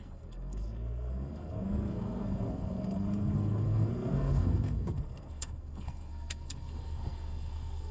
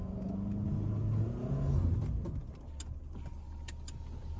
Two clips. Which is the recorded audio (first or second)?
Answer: second